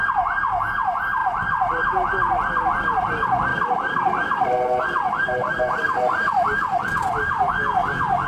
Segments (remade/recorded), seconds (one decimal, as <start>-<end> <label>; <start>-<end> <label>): 0.0-5.4 recorded; 5.4-6.9 remade; 6.9-8.3 recorded